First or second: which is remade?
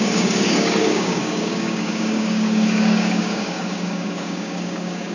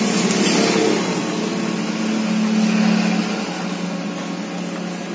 first